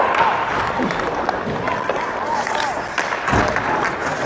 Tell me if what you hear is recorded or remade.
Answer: recorded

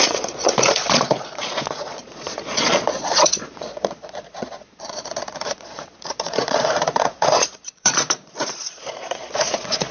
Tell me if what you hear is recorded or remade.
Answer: remade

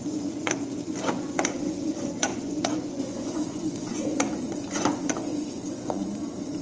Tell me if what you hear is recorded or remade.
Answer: remade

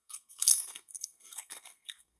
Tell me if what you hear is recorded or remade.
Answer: remade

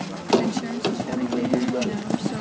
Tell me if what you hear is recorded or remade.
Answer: recorded